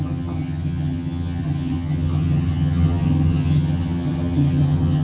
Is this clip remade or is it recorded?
remade